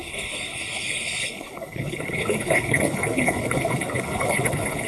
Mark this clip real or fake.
fake